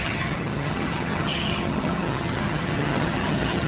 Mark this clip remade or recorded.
remade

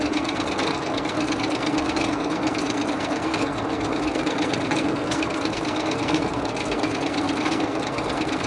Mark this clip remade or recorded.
remade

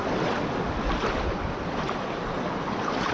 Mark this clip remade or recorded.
recorded